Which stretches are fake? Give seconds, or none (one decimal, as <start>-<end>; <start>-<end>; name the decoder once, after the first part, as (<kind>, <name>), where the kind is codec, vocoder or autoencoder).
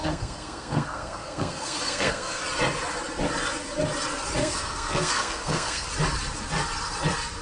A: 0.0-2.4 (codec, SNAC); 4.4-5.9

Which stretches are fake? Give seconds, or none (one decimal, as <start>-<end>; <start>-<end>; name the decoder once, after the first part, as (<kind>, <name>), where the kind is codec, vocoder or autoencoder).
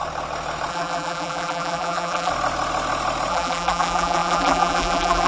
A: 0.7-2.3 (vocoder, BigVGAN v2); 3.3-5.3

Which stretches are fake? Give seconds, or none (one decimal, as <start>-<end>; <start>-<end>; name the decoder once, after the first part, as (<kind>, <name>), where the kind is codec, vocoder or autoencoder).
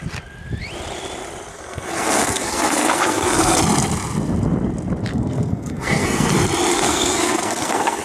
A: 1.5-3.6 (codec, SNAC); 5.1-6.3; 6.7-8.0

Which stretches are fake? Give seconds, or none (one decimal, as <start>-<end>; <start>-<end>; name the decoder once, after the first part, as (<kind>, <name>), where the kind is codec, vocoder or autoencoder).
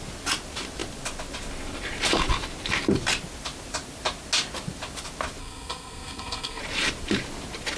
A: 5.4-6.6 (codec, SNAC)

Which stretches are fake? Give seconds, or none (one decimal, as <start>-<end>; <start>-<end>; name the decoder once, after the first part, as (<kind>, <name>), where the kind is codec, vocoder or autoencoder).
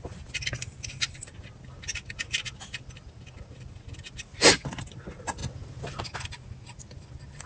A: none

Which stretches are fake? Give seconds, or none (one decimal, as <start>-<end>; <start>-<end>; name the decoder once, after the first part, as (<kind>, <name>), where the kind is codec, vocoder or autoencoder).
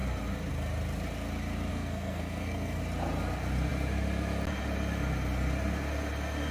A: 1.7-2.8 (codec, SNAC)